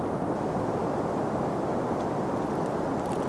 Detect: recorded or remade recorded